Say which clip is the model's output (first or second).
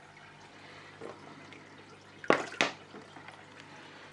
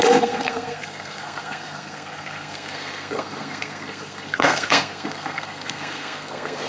second